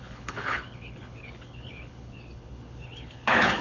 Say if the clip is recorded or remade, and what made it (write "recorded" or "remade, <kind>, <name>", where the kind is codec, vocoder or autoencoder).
remade, codec, HILCodec